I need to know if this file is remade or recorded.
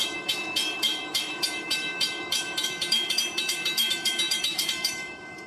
remade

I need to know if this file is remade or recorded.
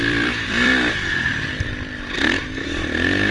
remade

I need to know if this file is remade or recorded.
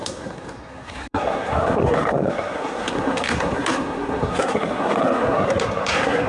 remade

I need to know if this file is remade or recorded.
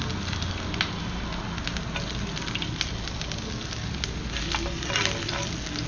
recorded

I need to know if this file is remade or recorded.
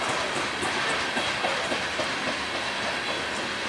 recorded